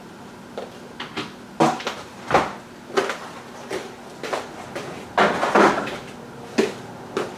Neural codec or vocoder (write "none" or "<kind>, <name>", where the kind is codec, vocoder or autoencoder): none